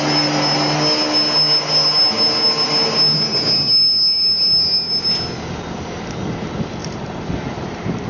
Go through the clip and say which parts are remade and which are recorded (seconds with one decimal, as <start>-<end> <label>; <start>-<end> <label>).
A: 0.0-6.8 recorded; 6.8-8.1 remade